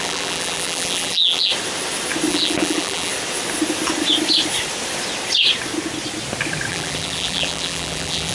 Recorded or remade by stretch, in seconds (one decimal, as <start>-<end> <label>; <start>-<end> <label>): 0.0-1.5 remade; 1.5-2.3 recorded; 2.3-3.1 remade; 3.1-6.7 recorded; 6.7-8.3 remade